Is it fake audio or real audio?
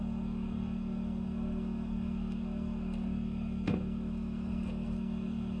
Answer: fake